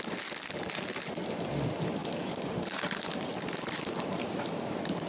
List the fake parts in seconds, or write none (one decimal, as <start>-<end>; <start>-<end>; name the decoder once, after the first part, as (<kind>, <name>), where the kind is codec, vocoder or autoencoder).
none